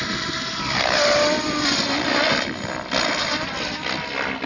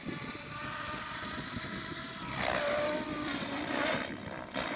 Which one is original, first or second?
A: first